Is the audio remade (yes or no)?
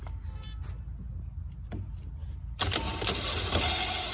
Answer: no